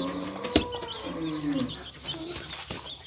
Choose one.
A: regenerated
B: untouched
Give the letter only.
A